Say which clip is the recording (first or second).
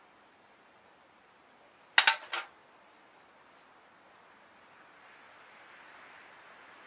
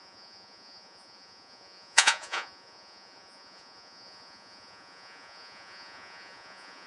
first